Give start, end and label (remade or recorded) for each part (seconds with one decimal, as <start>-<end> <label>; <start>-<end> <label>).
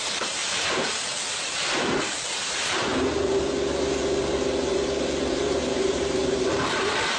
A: 0.0-0.4 remade; 0.4-2.3 recorded; 2.3-2.9 remade; 2.9-5.3 recorded; 5.3-6.2 remade; 6.2-6.8 recorded; 6.8-7.2 remade